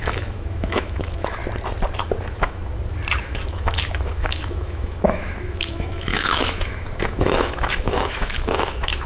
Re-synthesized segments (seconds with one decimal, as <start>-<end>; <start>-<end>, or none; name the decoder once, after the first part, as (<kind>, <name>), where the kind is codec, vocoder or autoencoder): 0.0-1.4 (autoencoder, DAC-VAE); 2.2-2.6; 3.2-9.1